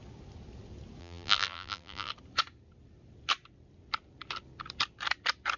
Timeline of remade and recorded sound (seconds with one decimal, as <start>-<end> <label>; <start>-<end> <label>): 0.0-1.0 recorded; 1.0-2.1 remade; 2.1-5.6 recorded